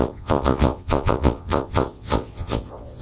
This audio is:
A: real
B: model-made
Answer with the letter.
B